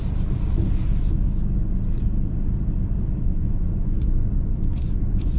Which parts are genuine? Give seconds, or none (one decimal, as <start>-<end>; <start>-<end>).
0.0-3.2